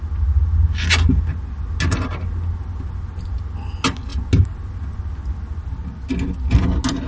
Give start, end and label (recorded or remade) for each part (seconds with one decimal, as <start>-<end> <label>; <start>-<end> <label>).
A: 0.0-7.1 recorded